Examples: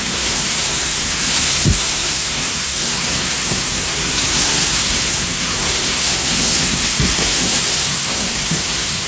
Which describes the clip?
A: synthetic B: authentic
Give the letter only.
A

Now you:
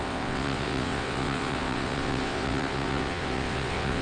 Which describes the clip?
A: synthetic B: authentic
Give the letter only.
A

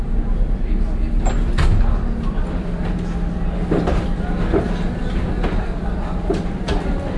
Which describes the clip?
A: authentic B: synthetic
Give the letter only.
A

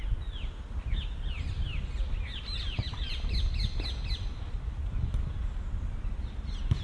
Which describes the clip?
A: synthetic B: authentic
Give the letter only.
B